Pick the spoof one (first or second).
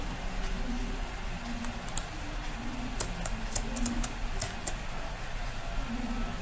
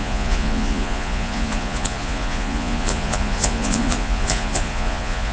second